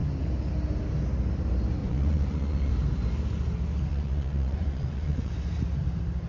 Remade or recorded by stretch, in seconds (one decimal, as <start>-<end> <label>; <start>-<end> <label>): 0.0-1.8 recorded; 1.8-2.7 remade; 2.7-3.9 recorded; 3.9-5.3 remade; 5.3-6.3 recorded